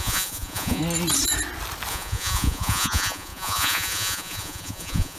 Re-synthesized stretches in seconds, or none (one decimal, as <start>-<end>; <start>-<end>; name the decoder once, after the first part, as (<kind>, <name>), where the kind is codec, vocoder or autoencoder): 0.0-0.8 (vocoder, Vocos); 1.9-5.2